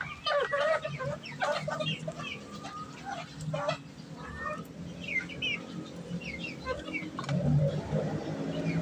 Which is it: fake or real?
real